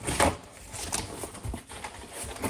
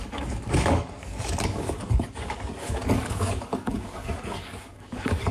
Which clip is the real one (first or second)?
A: first